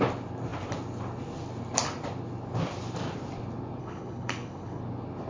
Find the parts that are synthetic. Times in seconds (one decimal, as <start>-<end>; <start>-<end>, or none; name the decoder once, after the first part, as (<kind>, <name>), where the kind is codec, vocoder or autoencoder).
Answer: 3.8-4.8 (codec, HILCodec)